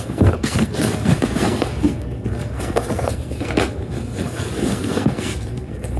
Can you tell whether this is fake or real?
fake